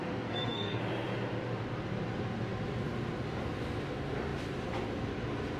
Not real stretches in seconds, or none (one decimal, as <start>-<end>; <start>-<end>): 0.0-0.8

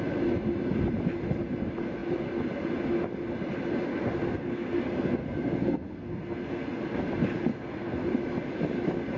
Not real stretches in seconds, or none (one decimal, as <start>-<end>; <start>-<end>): 3.9-6.8; 7.5-8.1

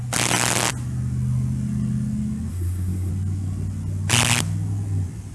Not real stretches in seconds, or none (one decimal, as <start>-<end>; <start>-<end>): 2.5-3.1

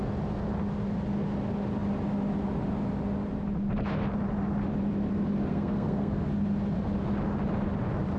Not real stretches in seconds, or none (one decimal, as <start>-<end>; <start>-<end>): 5.5-6.3

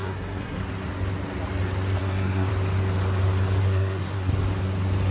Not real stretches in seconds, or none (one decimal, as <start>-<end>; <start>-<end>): 0.0-0.6; 2.0-2.5; 3.6-4.4

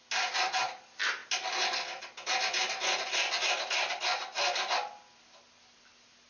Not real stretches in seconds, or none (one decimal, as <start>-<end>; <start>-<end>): none

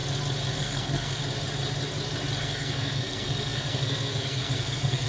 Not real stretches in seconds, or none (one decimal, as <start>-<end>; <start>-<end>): 0.6-1.2; 2.4-5.1

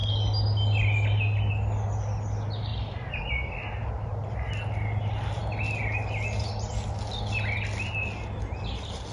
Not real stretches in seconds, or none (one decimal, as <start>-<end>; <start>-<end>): none